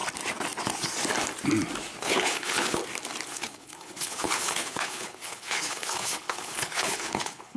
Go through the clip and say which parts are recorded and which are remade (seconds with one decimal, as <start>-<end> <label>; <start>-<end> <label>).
0.0-2.0 recorded; 2.0-2.8 remade; 2.8-3.3 recorded; 3.3-7.6 remade